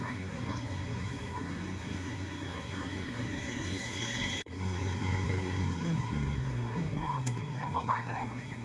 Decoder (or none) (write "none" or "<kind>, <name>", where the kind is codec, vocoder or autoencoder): codec, SNAC